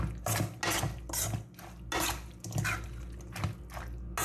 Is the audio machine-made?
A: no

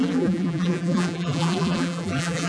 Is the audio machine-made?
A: yes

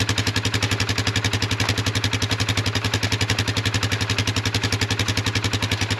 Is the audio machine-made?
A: no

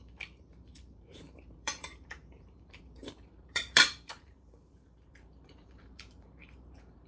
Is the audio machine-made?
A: yes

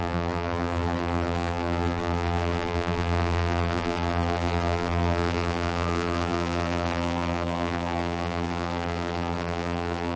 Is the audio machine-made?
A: yes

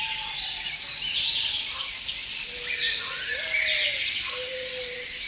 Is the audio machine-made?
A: yes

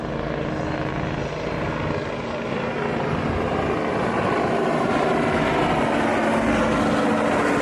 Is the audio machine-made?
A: no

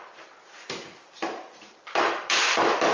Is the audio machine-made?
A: yes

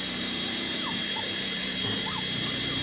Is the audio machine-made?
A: yes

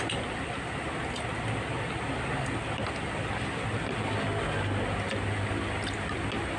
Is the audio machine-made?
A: no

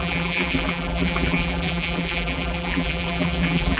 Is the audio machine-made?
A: yes